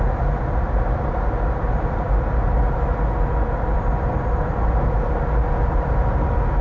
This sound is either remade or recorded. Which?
recorded